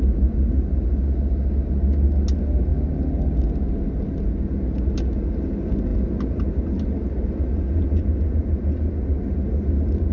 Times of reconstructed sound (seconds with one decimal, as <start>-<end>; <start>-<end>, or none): none